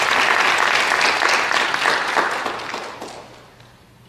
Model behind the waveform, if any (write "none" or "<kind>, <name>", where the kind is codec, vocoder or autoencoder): none